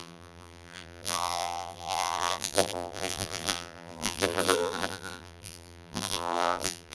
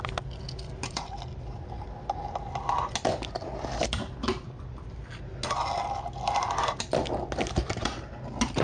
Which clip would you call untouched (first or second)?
second